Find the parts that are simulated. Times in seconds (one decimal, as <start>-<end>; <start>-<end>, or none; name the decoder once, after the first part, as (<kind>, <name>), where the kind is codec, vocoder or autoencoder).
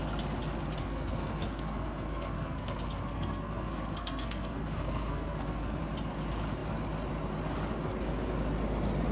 0.8-5.8 (codec, SNAC)